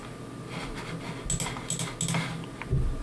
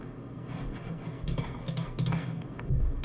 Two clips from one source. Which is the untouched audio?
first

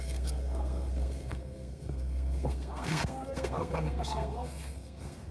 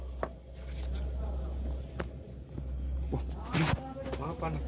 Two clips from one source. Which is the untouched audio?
second